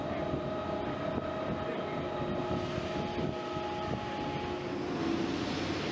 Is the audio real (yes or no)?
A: yes